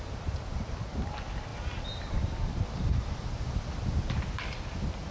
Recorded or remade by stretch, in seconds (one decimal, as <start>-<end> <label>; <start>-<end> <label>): 0.0-5.1 remade